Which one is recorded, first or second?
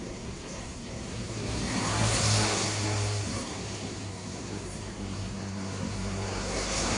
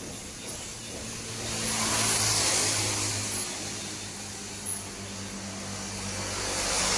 second